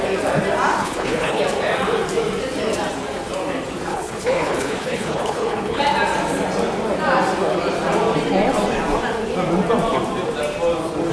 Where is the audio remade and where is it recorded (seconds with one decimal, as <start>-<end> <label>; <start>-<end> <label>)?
0.0-0.8 recorded; 0.8-1.4 remade; 1.4-3.9 recorded; 3.9-5.8 remade; 5.8-11.1 recorded